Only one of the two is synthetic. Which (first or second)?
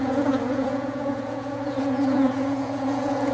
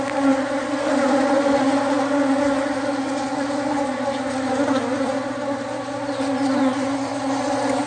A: first